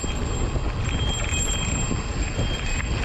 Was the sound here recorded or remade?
recorded